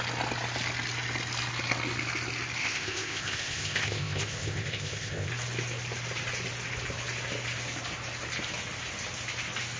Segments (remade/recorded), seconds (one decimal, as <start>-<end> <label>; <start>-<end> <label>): 0.0-2.6 recorded; 2.6-5.3 remade; 5.3-9.8 recorded